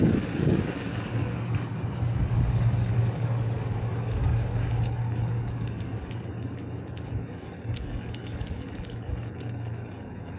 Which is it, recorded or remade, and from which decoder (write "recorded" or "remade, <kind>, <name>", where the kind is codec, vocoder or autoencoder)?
remade, codec, DAC